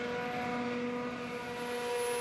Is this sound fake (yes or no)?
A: no